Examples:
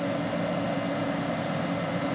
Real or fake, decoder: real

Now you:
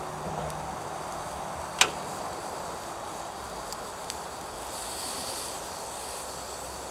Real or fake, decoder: real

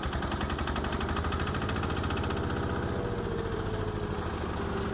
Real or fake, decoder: real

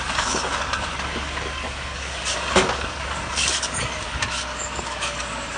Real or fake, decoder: fake, codec, DAC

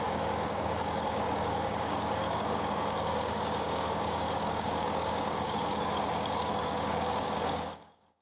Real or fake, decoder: fake, codec, DAC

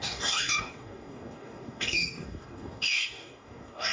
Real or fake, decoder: fake, codec, DAC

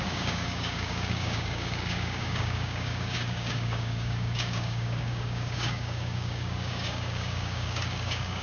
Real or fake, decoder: fake, codec, DAC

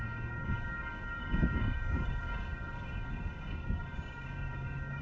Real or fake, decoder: fake, codec, DAC